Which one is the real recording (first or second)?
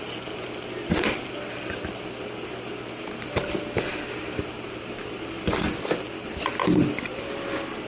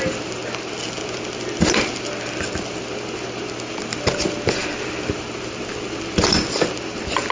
second